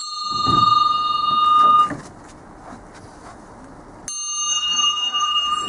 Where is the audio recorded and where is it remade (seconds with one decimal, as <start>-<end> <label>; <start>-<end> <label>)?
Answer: 0.0-4.5 recorded; 4.5-5.7 remade